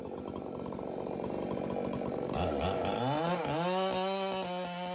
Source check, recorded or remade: recorded